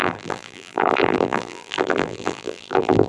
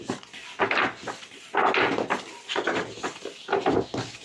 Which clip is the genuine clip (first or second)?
second